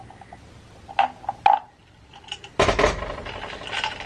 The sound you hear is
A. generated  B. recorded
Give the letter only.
B